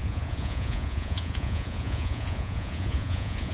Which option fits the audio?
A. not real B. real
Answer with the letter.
A